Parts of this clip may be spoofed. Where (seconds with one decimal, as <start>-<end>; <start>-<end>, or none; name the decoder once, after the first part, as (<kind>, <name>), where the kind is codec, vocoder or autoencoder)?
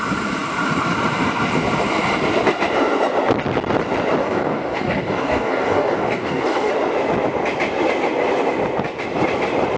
4.2-6.7 (codec, DAC)